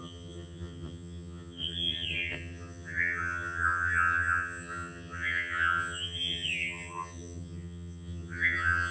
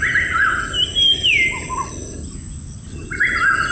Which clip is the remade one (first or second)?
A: first